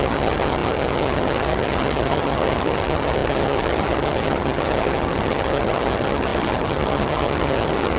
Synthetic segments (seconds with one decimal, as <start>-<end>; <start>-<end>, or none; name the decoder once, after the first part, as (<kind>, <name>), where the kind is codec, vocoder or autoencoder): 0.0-8.0 (vocoder, HiFi-GAN)